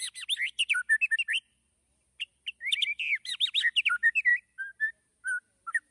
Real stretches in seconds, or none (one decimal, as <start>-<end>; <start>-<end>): 0.0-5.9